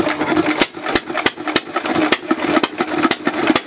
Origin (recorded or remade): recorded